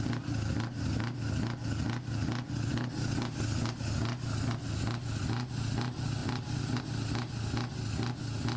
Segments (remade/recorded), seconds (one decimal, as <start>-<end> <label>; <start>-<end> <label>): 0.0-6.2 recorded; 6.2-6.8 remade; 6.8-8.6 recorded